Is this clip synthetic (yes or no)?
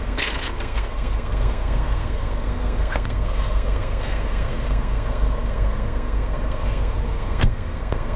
yes